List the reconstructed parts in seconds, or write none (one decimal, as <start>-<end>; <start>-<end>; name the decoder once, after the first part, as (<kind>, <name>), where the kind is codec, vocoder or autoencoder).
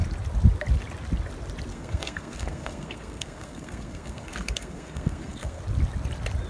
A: 1.7-5.6 (codec, SNAC)